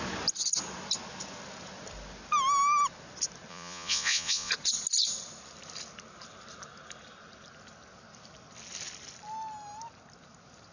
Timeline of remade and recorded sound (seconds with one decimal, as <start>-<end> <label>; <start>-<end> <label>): 0.0-3.5 recorded; 3.5-4.5 remade; 4.5-10.7 recorded

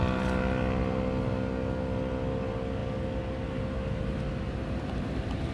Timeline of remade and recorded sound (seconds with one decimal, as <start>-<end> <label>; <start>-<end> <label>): 0.0-5.5 recorded

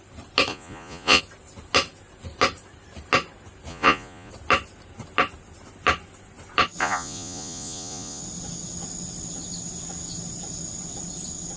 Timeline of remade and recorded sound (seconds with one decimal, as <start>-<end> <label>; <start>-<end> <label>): 0.0-0.5 recorded; 0.5-1.2 remade; 1.2-3.7 recorded; 3.7-4.3 remade; 4.3-6.8 recorded; 6.8-8.2 remade; 8.2-11.6 recorded

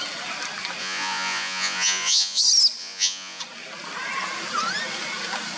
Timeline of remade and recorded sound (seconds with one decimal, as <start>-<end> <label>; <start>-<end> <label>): 0.0-0.8 recorded; 0.8-2.4 remade; 2.4-2.8 recorded; 2.8-3.4 remade; 3.4-5.6 recorded